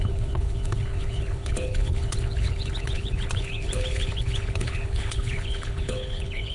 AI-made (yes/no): yes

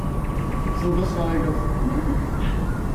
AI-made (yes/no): no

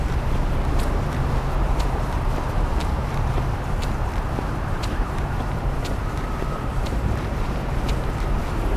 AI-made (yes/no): yes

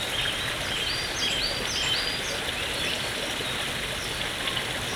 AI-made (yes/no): no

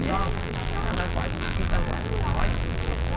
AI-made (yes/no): yes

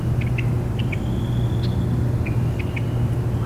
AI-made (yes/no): no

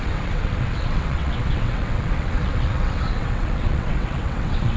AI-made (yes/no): yes